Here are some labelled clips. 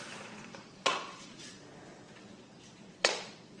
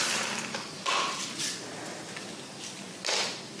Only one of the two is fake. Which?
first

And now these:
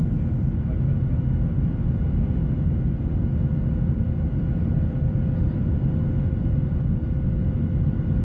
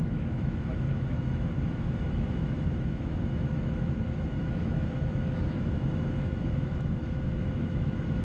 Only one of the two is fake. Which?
second